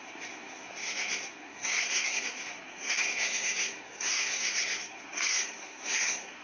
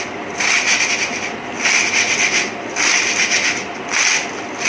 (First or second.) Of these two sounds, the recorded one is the second